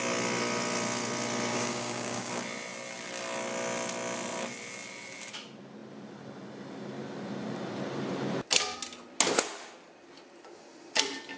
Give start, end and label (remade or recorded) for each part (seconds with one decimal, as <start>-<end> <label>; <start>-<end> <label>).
0.0-1.5 recorded; 1.5-2.3 remade; 2.3-11.4 recorded